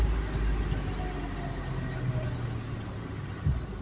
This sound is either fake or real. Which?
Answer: real